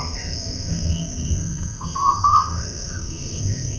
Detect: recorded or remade remade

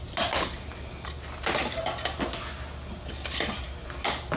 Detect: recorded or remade recorded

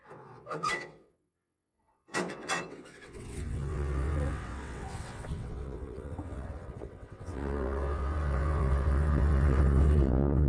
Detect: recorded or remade remade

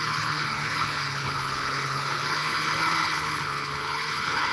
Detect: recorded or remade remade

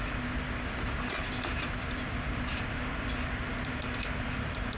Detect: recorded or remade recorded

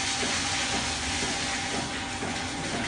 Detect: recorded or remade remade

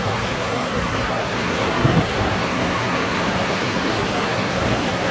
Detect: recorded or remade remade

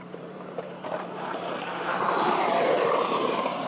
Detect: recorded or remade remade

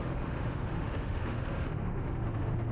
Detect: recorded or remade remade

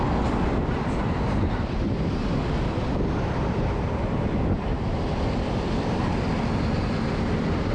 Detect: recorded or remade remade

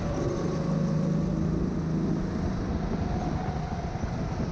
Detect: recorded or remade recorded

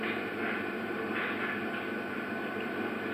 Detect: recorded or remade recorded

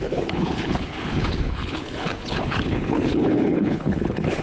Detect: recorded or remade remade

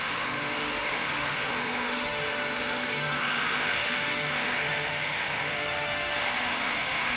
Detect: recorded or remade remade